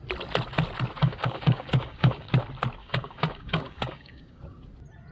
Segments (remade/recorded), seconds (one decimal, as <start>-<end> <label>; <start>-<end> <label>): 0.0-1.0 recorded; 1.0-2.3 remade; 2.3-2.8 recorded; 2.8-4.4 remade; 4.4-5.1 recorded